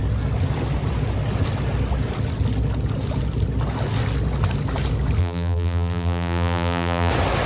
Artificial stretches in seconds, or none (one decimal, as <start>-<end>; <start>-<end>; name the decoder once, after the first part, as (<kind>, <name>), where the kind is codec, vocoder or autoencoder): 5.2-7.1 (vocoder, BigVGAN v2)